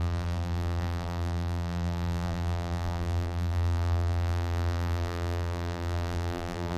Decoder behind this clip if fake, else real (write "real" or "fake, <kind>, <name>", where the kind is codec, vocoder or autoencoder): fake, vocoder, BigVGAN v2